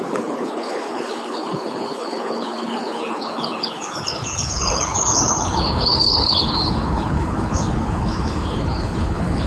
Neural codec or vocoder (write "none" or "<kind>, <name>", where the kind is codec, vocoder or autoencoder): codec, HILCodec